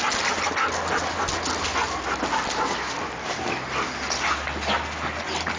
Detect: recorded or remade recorded